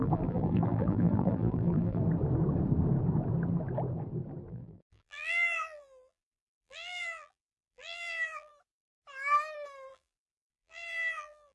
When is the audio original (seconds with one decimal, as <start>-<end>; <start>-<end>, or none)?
2.0-4.5; 8.5-9.9